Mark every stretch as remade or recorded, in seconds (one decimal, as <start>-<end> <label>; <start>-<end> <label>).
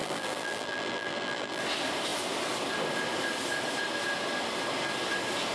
0.0-1.6 remade; 1.6-5.5 recorded